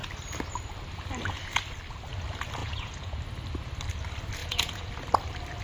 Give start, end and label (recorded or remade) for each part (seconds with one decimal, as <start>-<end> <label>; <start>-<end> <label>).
0.0-2.6 recorded; 2.6-3.2 remade; 3.2-4.4 recorded; 4.4-4.9 remade; 4.9-5.6 recorded